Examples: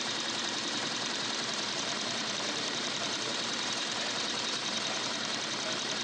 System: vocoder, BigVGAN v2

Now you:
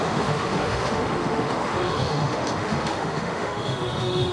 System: autoencoder, DAC-VAE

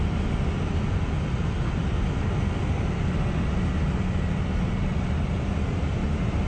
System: none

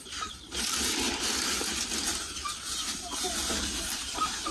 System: vocoder, BigVGAN v2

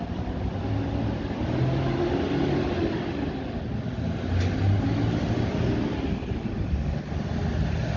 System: none